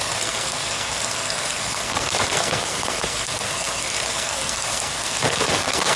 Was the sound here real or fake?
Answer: fake